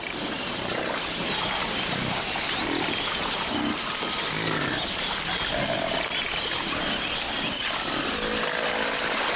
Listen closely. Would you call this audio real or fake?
real